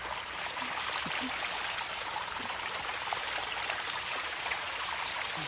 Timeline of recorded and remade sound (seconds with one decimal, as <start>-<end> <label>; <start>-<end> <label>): 0.0-4.1 recorded; 4.1-4.9 remade; 4.9-5.5 recorded